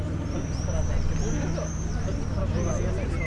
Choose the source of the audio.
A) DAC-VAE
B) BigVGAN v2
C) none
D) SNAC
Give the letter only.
C